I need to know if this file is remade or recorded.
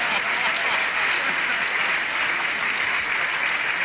recorded